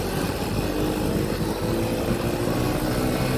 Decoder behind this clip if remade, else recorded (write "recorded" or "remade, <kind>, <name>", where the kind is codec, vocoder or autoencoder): recorded